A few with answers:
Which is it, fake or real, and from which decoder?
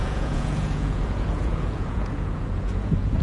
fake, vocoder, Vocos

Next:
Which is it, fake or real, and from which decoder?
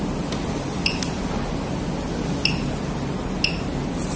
real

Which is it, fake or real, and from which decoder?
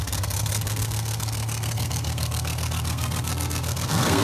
fake, codec, SNAC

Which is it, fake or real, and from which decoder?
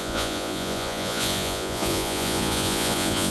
fake, vocoder, Vocos